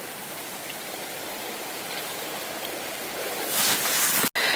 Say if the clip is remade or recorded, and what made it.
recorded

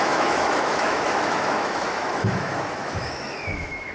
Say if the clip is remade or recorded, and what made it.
remade, autoencoder, DAC-VAE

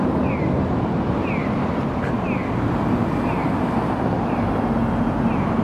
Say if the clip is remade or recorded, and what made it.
recorded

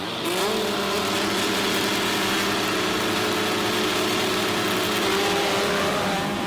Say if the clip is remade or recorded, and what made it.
recorded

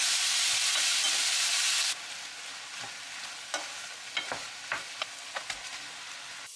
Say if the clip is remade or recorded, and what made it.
recorded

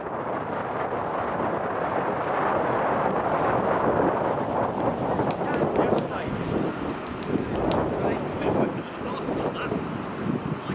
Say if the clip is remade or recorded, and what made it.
recorded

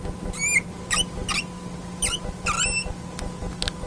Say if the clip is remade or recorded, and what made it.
recorded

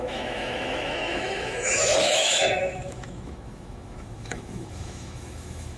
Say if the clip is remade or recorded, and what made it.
remade, autoencoder, DAC-VAE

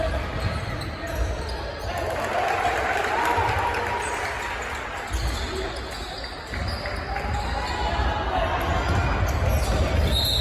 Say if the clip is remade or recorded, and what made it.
recorded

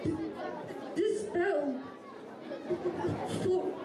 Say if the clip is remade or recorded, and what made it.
recorded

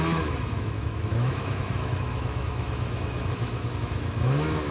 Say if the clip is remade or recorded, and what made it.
remade, autoencoder, DAC-VAE